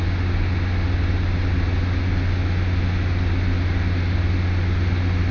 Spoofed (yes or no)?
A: no